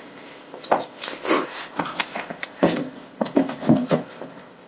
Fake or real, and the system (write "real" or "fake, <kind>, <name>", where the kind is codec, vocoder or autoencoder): fake, codec, ZipCodec